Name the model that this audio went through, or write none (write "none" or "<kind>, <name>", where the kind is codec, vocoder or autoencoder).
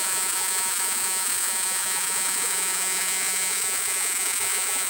vocoder, Vocos